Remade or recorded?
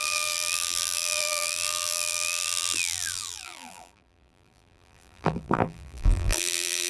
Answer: remade